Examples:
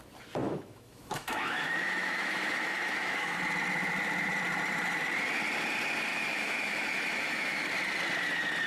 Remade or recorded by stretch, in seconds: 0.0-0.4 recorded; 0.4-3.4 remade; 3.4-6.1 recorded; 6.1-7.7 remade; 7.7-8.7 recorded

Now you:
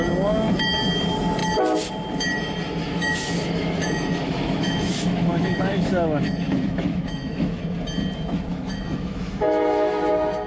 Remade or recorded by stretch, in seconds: 0.0-2.8 recorded; 2.8-7.6 remade; 7.6-8.5 recorded; 8.5-10.1 remade; 10.1-10.5 recorded

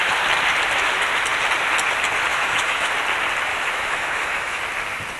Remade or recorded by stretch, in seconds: 0.0-2.3 recorded; 2.3-2.9 remade; 2.9-3.5 recorded; 3.5-4.6 remade; 4.6-5.2 recorded

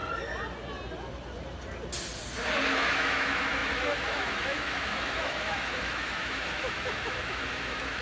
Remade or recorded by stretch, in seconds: 0.0-2.7 recorded; 2.7-8.0 remade

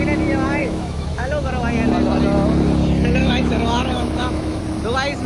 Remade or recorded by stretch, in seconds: 0.0-0.6 recorded; 0.6-1.5 remade; 1.5-3.2 recorded; 3.2-4.6 remade; 4.6-5.3 recorded

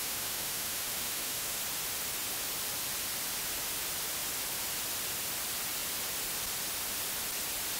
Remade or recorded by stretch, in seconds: 0.0-1.6 remade; 1.6-7.8 recorded

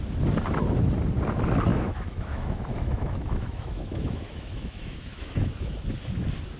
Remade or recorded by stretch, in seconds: 0.0-1.7 recorded; 1.7-5.7 remade; 5.7-6.6 recorded